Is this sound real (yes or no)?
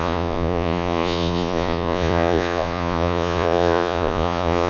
no